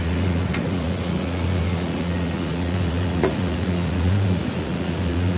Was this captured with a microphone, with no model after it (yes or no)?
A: no